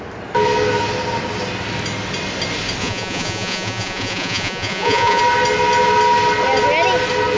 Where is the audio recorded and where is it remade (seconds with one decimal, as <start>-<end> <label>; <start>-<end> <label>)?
0.0-2.8 recorded; 2.8-5.2 remade; 5.2-7.4 recorded